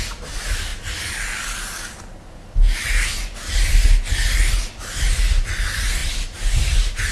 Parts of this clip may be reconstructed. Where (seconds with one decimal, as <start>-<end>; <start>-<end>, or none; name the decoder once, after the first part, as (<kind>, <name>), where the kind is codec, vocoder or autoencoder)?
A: none